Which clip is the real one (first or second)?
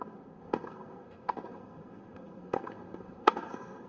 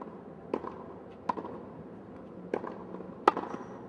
second